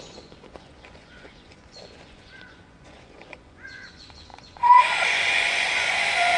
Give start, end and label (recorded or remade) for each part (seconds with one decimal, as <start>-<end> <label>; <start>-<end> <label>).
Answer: 0.0-6.4 remade